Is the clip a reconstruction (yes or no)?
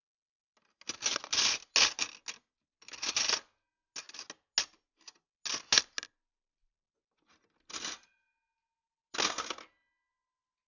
no